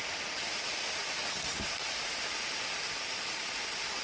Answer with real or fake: real